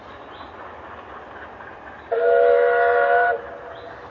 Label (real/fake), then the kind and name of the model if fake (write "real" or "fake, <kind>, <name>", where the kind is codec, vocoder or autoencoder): real